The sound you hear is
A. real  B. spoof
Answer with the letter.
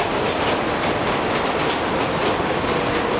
A